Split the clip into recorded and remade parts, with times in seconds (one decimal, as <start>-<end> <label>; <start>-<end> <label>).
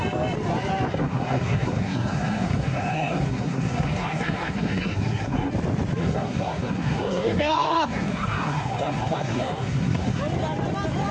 0.0-0.9 recorded; 0.9-5.5 remade; 5.5-6.0 recorded; 6.0-10.2 remade; 10.2-11.1 recorded